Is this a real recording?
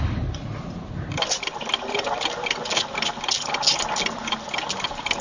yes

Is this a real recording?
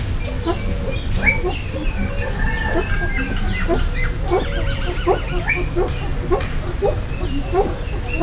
yes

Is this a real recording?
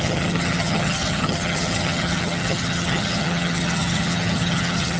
no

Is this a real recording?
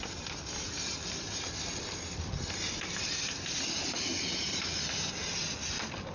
yes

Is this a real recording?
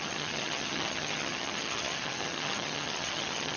no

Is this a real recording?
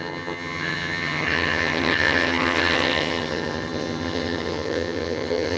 no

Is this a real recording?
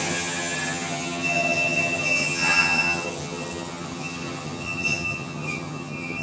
no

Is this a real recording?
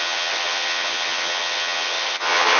no